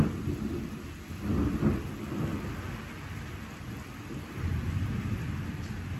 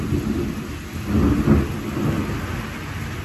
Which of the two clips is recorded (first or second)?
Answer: second